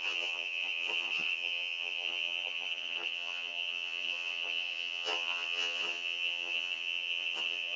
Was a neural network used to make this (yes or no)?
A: yes